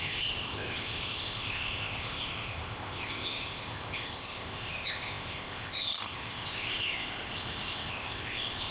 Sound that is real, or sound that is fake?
fake